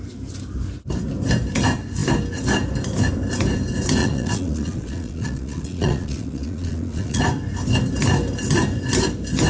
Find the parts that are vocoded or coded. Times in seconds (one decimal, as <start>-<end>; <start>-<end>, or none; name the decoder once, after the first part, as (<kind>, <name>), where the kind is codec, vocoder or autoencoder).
4.0-7.2 (vocoder, Vocos)